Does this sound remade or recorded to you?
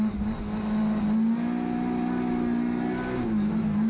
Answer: recorded